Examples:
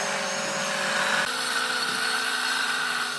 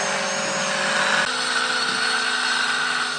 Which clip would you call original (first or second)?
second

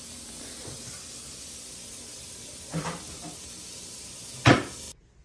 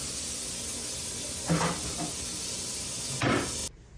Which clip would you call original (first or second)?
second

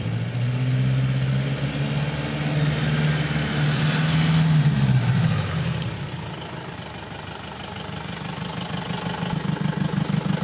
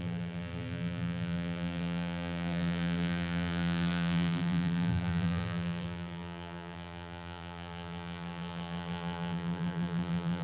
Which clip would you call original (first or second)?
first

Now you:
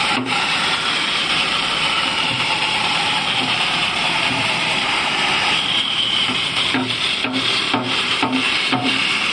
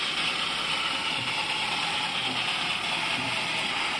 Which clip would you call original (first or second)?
second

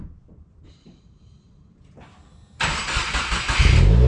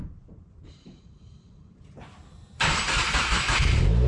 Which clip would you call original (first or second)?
first